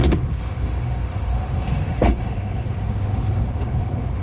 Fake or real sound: fake